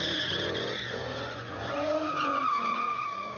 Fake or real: fake